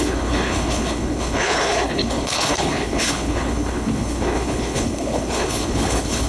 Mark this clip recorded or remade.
remade